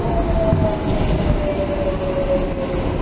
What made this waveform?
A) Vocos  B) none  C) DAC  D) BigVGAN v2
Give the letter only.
B